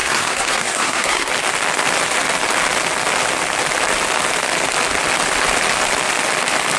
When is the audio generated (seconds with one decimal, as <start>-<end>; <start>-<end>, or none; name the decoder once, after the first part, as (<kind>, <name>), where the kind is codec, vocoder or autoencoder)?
0.0-1.3 (codec, SNAC)

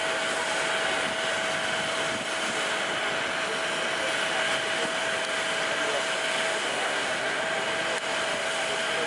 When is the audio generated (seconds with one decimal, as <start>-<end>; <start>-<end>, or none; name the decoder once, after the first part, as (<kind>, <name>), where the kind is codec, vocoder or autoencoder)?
6.6-7.4 (codec, SNAC)

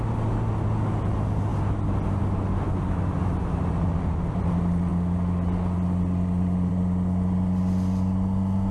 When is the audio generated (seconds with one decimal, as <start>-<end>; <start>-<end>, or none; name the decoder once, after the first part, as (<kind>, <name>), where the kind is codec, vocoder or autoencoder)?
none

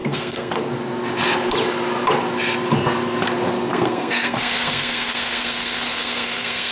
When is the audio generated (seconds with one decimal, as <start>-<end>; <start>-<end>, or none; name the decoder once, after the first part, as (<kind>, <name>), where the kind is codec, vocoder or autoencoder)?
0.0-0.5 (codec, SNAC); 3.7-6.7

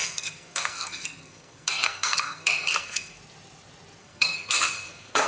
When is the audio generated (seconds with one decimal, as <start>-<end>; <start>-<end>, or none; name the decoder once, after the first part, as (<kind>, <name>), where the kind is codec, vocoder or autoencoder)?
0.0-3.2 (codec, SNAC); 4.0-5.3

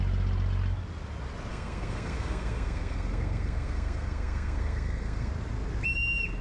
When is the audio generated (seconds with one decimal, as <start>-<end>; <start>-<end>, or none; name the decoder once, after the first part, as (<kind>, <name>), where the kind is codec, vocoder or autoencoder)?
1.5-5.3 (codec, SNAC)

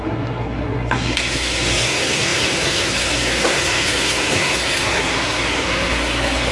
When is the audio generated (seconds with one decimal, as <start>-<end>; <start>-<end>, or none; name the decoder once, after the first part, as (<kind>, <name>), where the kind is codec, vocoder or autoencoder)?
0.0-6.5 (codec, SNAC)

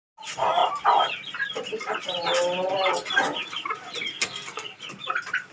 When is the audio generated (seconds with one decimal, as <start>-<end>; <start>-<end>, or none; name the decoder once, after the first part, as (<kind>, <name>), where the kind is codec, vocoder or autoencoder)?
4.1-4.8 (codec, SNAC)